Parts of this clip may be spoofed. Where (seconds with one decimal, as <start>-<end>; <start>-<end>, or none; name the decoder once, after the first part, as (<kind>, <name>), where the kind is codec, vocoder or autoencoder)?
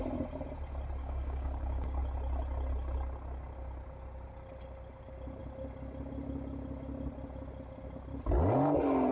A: 1.0-2.0 (codec, DAC)